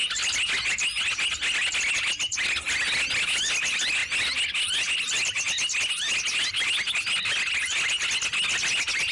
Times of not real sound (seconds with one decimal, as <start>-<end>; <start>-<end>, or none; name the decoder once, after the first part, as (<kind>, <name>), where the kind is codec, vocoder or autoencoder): none